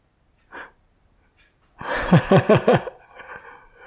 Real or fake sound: real